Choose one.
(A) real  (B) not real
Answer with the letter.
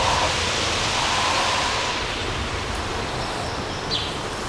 A